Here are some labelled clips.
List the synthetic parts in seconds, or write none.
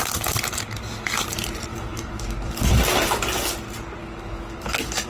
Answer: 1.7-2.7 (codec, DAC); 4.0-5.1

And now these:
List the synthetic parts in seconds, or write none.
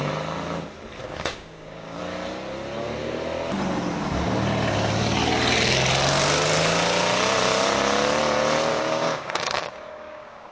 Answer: 1.0-2.0 (codec, DAC); 8.7-10.5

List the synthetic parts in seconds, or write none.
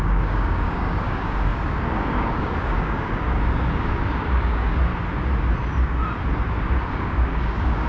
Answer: 0.0-4.9 (codec, DAC); 6.9-7.9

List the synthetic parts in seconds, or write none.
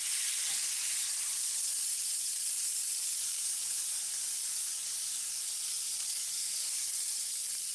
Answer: 3.1-5.4 (codec, DAC); 6.2-6.8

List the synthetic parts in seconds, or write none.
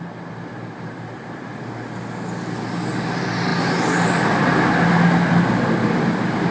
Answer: none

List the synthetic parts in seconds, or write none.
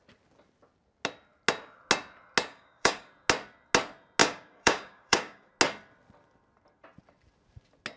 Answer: 2.5-3.1 (codec, DAC); 4.2-5.5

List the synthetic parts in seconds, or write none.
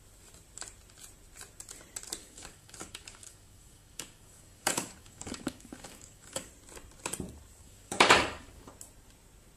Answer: 2.2-6.5 (codec, DAC); 7.6-8.7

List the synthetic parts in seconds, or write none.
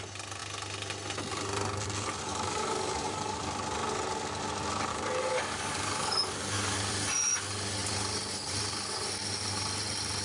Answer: 2.3-3.4 (codec, DAC); 4.9-6.9